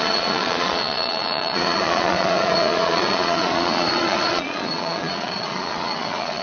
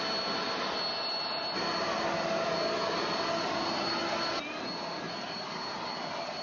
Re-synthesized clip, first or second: first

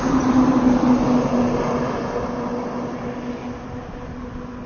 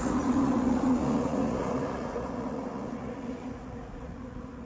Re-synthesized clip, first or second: second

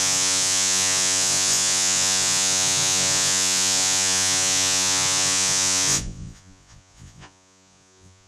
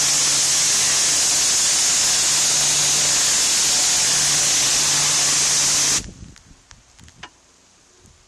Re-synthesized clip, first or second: first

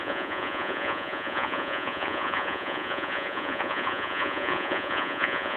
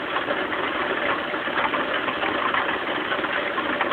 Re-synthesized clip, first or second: first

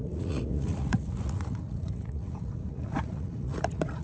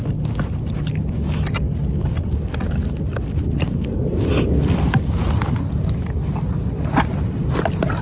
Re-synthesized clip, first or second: first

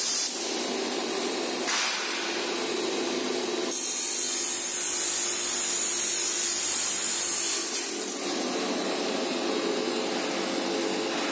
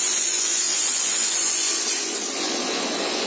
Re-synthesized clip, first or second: second